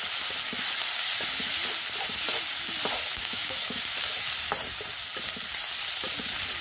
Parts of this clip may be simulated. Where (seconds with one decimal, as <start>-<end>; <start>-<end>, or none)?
3.1-3.8